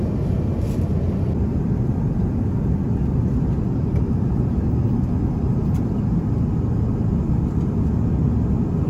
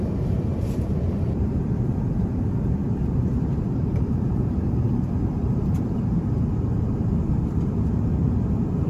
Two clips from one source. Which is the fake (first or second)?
second